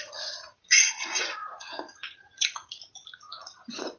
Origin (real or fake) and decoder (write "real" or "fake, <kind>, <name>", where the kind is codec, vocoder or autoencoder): fake, vocoder, Vocos